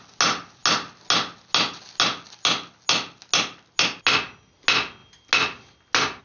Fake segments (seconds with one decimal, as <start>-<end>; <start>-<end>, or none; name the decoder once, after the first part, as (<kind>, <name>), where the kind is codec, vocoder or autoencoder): none

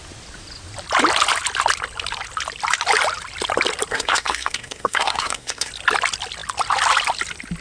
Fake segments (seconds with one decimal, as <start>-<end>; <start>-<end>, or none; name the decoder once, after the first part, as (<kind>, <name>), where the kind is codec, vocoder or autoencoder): 3.9-5.7 (codec, SNAC)

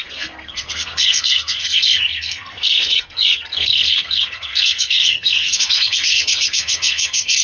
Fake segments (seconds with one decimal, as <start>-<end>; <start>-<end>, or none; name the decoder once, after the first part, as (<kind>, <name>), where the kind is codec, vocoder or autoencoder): 0.0-7.4 (codec, SNAC)

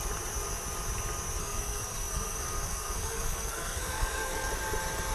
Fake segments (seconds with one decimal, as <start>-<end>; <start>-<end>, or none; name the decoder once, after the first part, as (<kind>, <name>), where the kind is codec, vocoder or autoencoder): 1.4-4.5 (codec, SNAC)

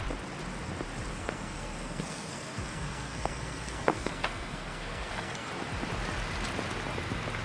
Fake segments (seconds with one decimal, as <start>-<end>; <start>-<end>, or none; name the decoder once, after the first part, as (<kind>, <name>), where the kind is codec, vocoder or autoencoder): 1.1-5.5 (codec, SNAC)

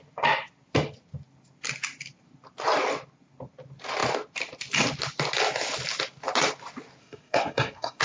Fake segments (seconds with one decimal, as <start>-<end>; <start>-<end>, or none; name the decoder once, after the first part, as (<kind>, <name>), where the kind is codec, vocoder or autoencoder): 7.0-8.0 (codec, SNAC)

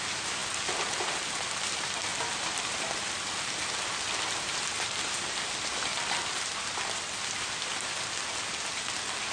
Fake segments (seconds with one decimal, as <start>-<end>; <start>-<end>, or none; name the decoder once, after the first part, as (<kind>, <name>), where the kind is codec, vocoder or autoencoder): none